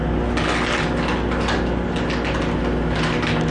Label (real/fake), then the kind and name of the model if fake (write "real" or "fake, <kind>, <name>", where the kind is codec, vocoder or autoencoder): real